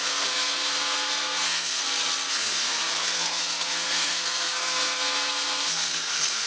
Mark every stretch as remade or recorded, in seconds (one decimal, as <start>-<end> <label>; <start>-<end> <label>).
0.0-1.8 remade; 1.8-2.3 recorded; 2.3-6.5 remade

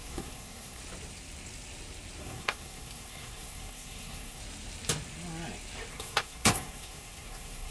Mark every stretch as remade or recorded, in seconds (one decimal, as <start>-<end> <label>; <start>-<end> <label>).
0.0-0.8 remade; 0.8-2.2 recorded; 2.2-4.4 remade; 4.4-5.9 recorded; 5.9-7.7 remade

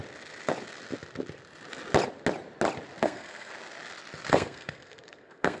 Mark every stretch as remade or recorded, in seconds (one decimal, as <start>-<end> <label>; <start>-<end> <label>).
0.0-3.0 recorded; 3.0-3.5 remade; 3.5-4.3 recorded; 4.3-5.6 remade

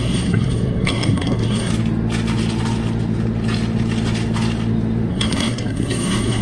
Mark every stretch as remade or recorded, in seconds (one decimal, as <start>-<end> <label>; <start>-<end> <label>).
0.0-1.7 remade; 1.7-5.1 recorded; 5.1-6.4 remade

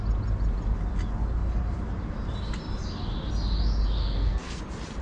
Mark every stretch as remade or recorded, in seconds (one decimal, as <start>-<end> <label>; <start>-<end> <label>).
0.0-4.0 recorded; 4.0-4.6 remade; 4.6-5.0 recorded

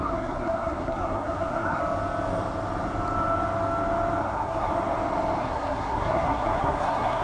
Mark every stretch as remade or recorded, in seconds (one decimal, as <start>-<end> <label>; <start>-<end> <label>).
0.0-1.8 remade; 1.8-4.2 recorded; 4.2-4.7 remade; 4.7-5.4 recorded; 5.4-7.2 remade